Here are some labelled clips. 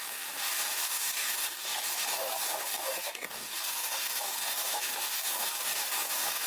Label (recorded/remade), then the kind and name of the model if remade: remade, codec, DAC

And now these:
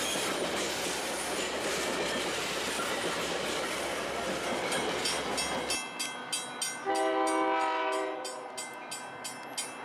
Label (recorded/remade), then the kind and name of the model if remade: recorded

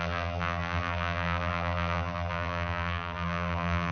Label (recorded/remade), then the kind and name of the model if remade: remade, vocoder, BigVGAN v2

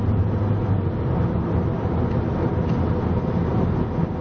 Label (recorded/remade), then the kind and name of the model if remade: recorded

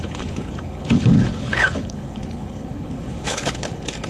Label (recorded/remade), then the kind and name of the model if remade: remade, codec, HILCodec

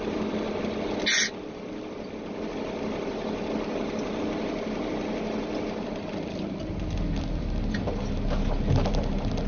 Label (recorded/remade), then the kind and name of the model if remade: recorded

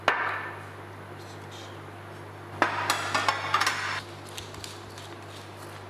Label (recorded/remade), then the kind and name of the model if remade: recorded